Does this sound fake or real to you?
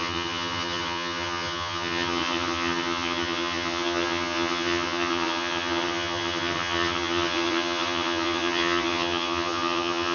fake